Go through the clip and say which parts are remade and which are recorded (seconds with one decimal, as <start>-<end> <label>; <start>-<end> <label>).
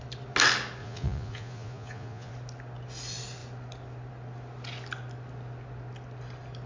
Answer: 0.0-0.8 recorded; 0.8-2.3 remade; 2.3-6.7 recorded